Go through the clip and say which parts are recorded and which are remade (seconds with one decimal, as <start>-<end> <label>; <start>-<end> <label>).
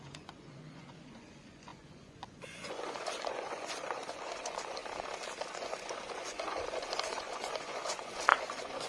0.0-4.8 remade; 4.8-5.5 recorded; 5.5-8.9 remade